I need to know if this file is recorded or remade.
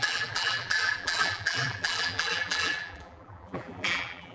remade